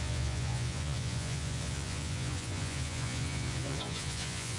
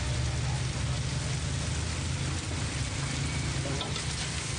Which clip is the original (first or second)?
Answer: second